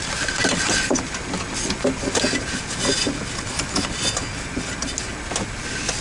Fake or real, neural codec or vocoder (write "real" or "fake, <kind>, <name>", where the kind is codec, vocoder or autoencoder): real